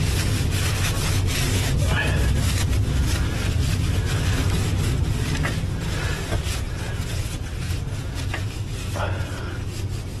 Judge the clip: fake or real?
real